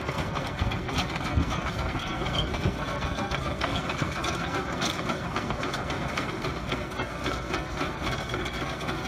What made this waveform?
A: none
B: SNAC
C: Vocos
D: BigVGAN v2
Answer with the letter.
B